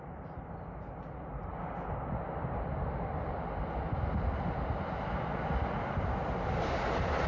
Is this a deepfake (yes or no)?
no